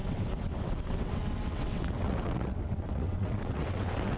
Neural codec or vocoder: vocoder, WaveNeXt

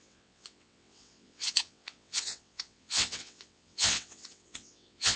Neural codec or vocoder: vocoder, WaveNeXt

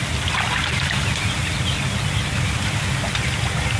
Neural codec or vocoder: none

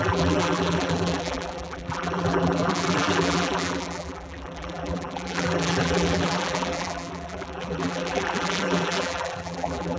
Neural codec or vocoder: vocoder, BigVGAN v2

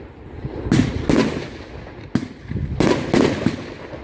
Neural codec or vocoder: none